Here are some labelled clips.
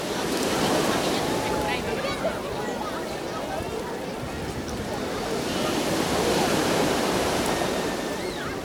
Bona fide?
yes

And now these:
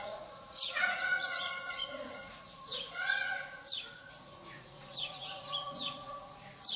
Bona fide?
no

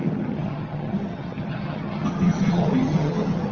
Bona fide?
no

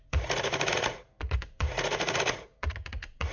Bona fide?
no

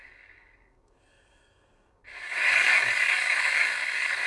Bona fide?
no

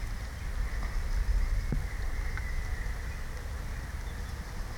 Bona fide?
yes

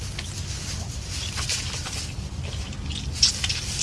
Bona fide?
yes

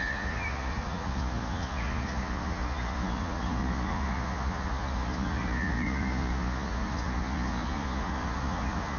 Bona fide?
no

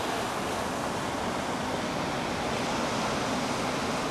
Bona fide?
yes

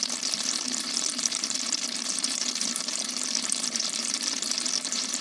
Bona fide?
no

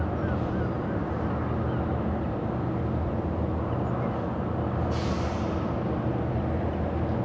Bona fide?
yes